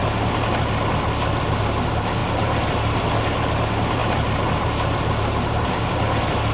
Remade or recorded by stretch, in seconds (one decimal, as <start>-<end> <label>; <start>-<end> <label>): 0.0-2.2 recorded; 2.2-3.0 remade; 3.0-4.0 recorded; 4.0-6.0 remade; 6.0-6.5 recorded